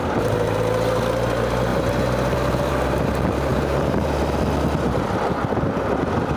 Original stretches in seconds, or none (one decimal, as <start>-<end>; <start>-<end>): 0.6-1.7; 2.7-3.5; 4.2-6.4